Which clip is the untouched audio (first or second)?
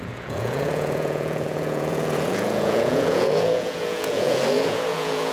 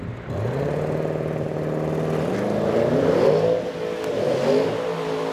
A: second